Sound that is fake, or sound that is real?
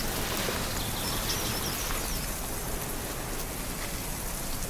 real